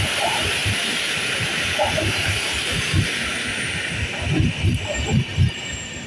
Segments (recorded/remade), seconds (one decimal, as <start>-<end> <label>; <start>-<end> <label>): 0.0-0.6 recorded; 0.6-2.8 remade; 2.8-6.1 recorded